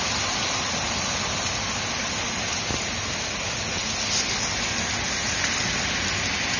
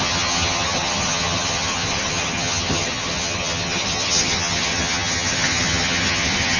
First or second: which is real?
first